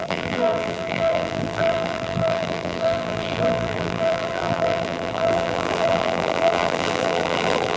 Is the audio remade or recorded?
remade